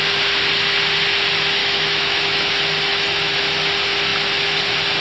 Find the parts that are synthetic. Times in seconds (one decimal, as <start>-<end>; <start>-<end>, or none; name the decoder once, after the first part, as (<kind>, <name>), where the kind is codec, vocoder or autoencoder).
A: 1.6-2.5 (autoencoder, DAC-VAE); 2.9-3.4